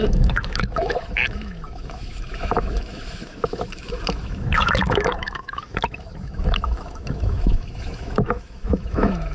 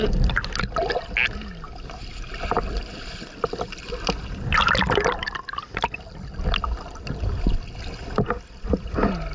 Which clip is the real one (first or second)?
second